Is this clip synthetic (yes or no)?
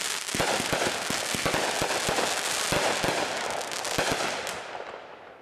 no